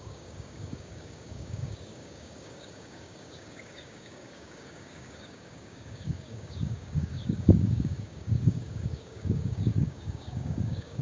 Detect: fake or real fake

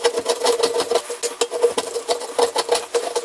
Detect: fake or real real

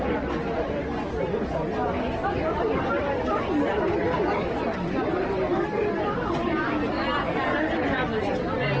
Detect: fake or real real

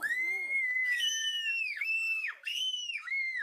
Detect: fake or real fake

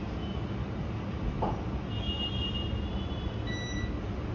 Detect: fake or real real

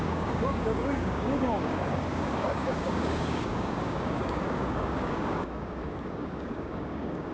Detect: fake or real fake